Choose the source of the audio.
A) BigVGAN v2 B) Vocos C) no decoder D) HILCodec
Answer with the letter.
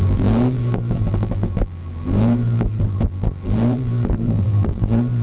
A